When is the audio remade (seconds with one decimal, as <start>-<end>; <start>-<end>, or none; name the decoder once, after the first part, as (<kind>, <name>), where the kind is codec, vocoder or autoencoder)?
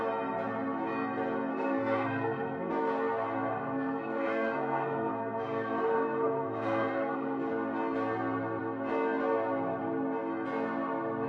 1.5-2.7 (codec, SNAC); 3.5-7.5